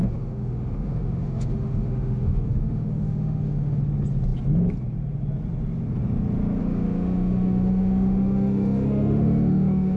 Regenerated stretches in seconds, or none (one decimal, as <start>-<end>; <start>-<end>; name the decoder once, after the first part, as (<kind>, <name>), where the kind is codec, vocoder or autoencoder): 0.0-3.8 (autoencoder, DAC-VAE); 6.6-10.0